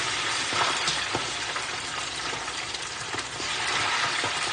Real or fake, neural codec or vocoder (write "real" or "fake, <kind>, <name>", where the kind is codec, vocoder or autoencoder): real